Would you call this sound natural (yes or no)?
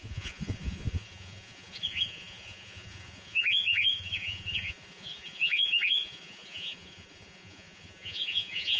no